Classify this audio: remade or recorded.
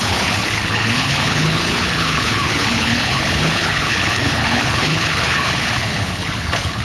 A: remade